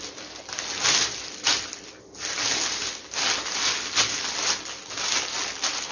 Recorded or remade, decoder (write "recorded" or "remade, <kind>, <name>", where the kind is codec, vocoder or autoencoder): recorded